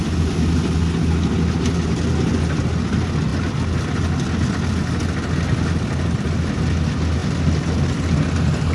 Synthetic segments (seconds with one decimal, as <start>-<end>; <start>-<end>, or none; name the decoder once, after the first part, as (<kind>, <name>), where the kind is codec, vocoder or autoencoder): none